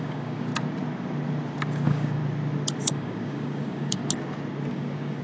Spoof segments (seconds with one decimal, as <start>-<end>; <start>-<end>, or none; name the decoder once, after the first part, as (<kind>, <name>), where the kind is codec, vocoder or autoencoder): 0.0-0.5 (codec, DAC); 1.7-2.2; 2.9-4.0; 4.7-5.2

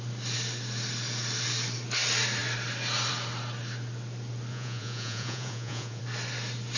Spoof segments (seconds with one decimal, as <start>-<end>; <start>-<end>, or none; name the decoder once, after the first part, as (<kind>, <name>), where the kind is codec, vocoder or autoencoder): 4.5-6.0 (vocoder, Vocos)

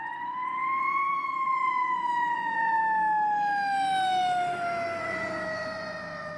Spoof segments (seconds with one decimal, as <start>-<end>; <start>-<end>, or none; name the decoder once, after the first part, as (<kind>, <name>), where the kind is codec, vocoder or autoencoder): 0.0-2.8 (vocoder, Vocos); 5.0-6.4

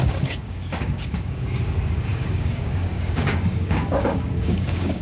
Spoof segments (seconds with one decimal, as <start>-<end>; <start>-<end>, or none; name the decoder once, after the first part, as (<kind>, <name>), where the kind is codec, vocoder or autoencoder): 0.0-5.0 (codec, DAC)